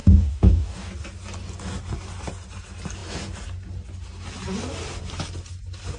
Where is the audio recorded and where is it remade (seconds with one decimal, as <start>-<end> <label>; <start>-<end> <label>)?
0.0-0.9 remade; 0.9-6.0 recorded